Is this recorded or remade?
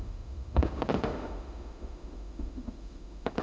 remade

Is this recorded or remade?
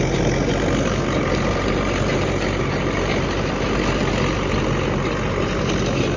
recorded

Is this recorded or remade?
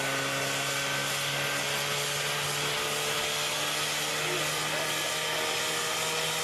recorded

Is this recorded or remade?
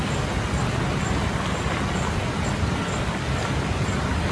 recorded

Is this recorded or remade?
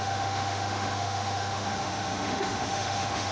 remade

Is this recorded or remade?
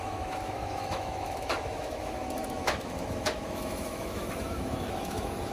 remade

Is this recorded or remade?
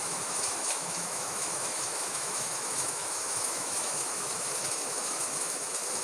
remade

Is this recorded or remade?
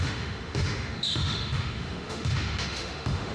remade